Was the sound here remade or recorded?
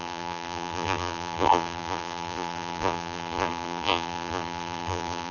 remade